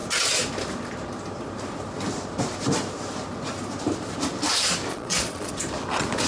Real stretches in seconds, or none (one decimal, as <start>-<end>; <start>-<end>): 0.0-4.9; 5.5-6.3